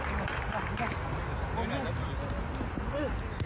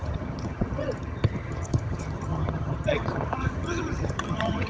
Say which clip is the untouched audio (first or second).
first